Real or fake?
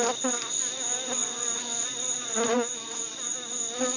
real